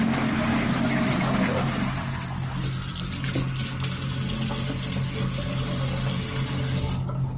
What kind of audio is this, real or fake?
real